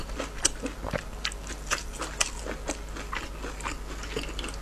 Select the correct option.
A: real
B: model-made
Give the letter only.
A